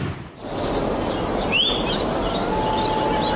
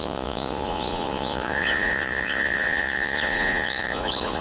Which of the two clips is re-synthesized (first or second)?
second